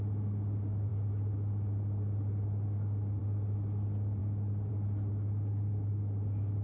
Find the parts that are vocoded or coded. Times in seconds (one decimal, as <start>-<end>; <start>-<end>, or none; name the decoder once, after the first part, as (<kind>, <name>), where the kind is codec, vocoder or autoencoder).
none